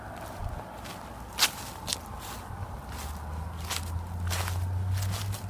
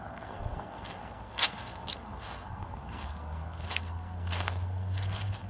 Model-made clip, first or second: second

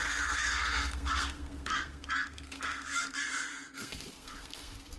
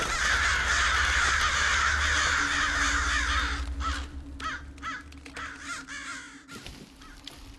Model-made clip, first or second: first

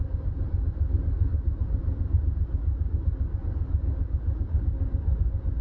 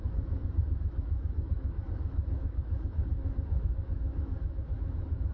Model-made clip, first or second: second